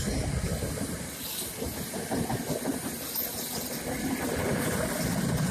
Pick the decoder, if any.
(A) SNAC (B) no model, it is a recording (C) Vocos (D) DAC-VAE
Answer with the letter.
B